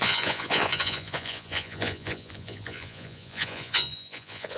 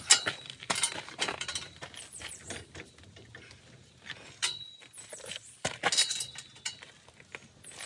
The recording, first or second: second